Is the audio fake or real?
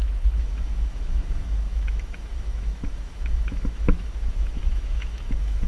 fake